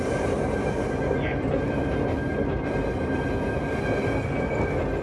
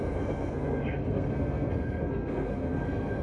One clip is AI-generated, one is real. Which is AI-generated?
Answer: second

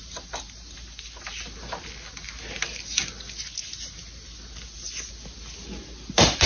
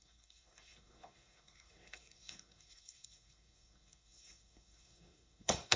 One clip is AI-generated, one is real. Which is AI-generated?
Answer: second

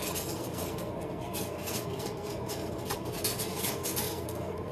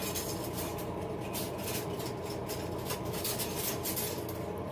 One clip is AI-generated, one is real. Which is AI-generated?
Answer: first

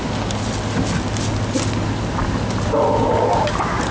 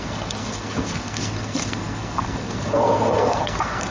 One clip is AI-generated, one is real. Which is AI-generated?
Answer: second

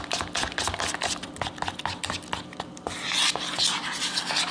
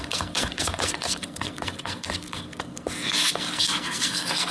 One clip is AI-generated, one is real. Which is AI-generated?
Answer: second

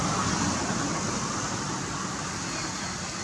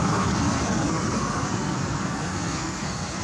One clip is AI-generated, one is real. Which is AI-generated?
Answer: second